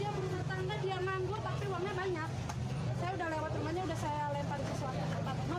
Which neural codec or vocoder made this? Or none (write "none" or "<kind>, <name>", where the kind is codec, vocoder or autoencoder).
none